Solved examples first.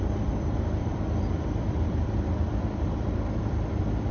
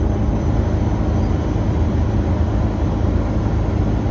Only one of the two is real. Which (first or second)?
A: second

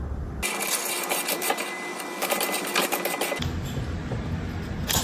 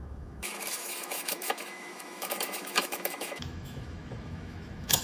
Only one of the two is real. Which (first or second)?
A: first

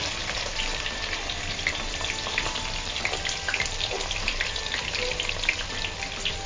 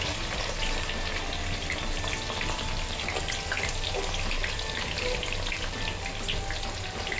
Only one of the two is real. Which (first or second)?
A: second